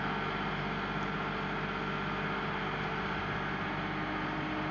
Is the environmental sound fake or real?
real